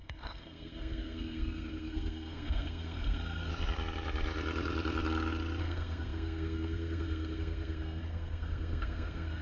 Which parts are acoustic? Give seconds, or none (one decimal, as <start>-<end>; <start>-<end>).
3.5-5.6